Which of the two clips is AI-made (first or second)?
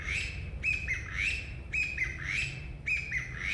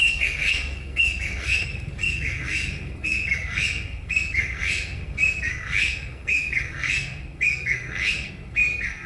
second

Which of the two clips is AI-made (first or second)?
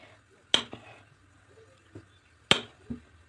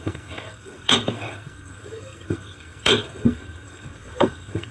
second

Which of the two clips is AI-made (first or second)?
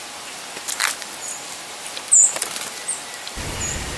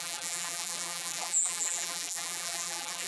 second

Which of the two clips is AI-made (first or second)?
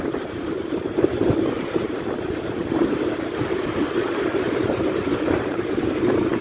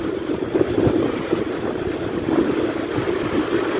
first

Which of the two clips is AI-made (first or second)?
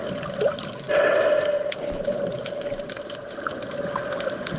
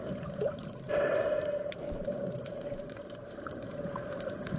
second